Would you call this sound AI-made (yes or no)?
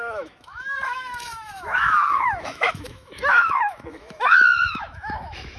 yes